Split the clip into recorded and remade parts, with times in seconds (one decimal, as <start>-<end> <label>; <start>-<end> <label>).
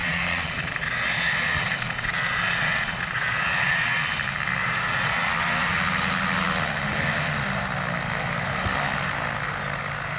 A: 0.0-4.0 remade; 4.0-4.6 recorded; 4.6-5.3 remade; 5.3-10.2 recorded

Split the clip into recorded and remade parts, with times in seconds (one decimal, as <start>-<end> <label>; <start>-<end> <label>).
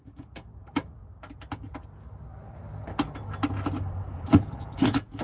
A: 0.0-1.0 remade; 1.0-4.1 recorded; 4.1-5.2 remade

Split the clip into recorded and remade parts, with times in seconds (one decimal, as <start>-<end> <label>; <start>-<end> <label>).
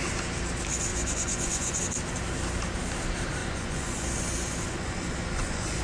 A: 0.0-0.9 recorded; 0.9-1.8 remade; 1.8-3.4 recorded; 3.4-5.8 remade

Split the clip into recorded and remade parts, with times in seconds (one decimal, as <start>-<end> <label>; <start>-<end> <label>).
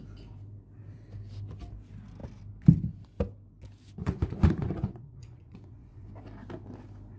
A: 0.0-4.0 recorded; 4.0-6.1 remade; 6.1-7.2 recorded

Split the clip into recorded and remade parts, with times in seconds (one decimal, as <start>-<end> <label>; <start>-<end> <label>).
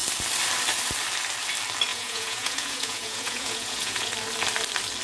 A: 0.0-1.9 recorded; 1.9-4.1 remade; 4.1-5.0 recorded